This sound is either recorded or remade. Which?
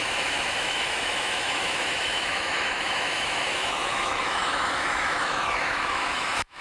remade